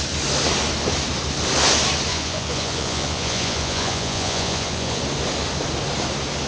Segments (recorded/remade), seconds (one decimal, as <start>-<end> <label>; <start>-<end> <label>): 0.0-2.1 recorded; 2.1-5.0 remade; 5.0-6.5 recorded